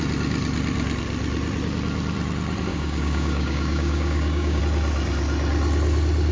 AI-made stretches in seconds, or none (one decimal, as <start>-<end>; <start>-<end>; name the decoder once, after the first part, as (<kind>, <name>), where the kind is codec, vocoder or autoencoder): 2.7-4.6 (codec, DAC)